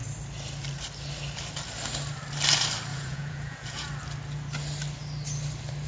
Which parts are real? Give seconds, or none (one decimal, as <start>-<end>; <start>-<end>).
0.0-2.9; 3.9-5.9